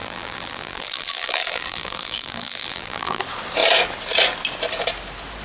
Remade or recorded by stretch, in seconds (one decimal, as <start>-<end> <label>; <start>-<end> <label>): 0.0-3.2 remade; 3.2-5.4 recorded

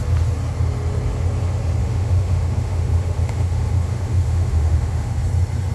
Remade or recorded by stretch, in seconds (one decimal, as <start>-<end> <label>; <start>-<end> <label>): 0.0-1.8 recorded; 1.8-5.2 remade; 5.2-5.7 recorded

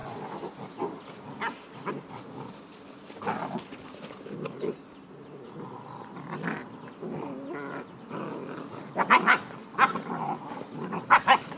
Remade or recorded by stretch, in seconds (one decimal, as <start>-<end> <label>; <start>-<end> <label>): 0.0-11.6 recorded

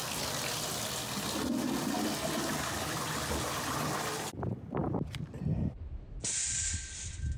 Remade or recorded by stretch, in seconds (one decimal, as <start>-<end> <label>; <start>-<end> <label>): 0.0-7.4 recorded